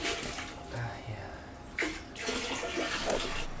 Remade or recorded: recorded